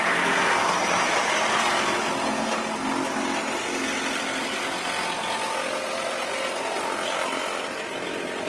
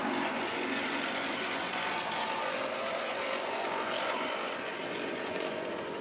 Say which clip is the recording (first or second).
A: first